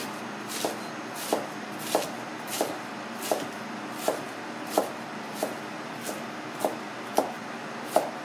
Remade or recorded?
recorded